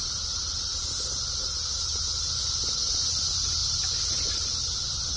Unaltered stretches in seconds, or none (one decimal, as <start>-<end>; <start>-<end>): 0.0-5.2